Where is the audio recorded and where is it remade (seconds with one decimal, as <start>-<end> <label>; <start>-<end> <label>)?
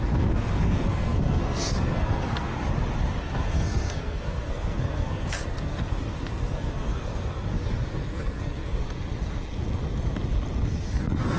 0.0-2.5 remade; 2.5-3.2 recorded; 3.2-8.8 remade; 8.8-10.9 recorded; 10.9-11.4 remade